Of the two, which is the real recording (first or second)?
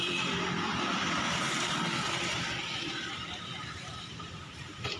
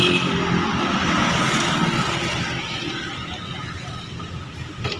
second